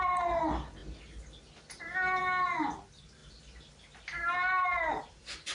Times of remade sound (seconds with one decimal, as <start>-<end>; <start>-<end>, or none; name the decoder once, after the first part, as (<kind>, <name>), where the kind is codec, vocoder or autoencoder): none